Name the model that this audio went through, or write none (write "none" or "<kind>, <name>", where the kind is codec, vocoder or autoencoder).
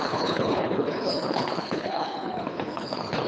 codec, HILCodec